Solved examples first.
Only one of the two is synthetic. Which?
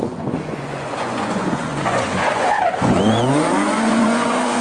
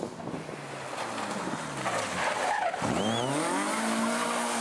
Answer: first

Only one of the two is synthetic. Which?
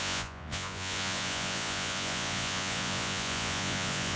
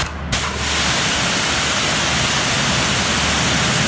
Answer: first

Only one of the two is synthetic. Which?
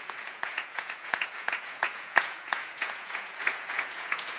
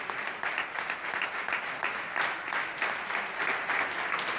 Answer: first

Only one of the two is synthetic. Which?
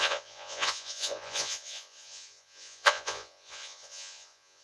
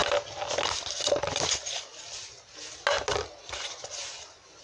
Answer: first